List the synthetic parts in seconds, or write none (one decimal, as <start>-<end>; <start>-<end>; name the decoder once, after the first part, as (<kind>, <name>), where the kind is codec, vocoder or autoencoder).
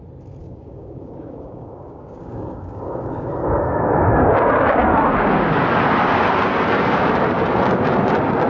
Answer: 0.4-3.3 (codec, DAC)